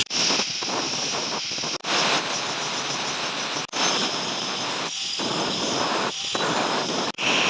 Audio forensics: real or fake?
real